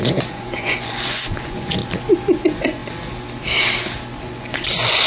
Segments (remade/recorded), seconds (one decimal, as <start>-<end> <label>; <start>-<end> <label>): 0.0-1.8 remade; 1.8-2.4 recorded; 2.4-2.8 remade; 2.8-4.2 recorded; 4.2-5.1 remade